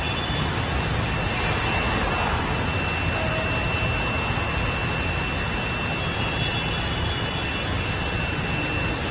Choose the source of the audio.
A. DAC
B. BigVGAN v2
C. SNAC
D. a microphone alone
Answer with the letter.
D